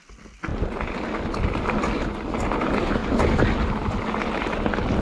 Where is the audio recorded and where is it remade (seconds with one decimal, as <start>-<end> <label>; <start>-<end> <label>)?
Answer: 0.0-5.0 recorded